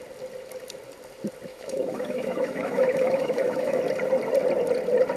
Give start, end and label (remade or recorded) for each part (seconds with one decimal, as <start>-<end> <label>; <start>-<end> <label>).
0.0-1.5 recorded; 1.5-3.8 remade; 3.8-5.2 recorded